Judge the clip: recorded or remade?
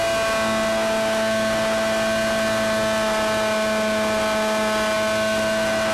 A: recorded